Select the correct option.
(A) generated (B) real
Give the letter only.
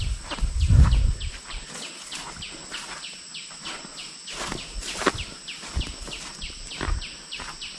B